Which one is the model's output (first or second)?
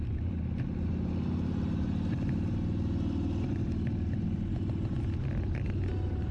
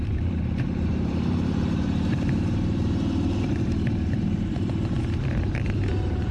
second